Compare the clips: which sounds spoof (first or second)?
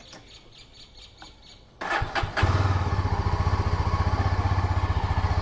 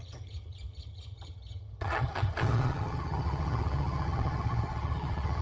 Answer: second